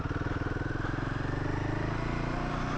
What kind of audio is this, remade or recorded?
recorded